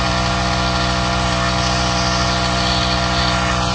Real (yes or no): yes